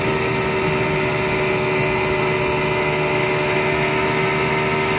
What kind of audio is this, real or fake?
real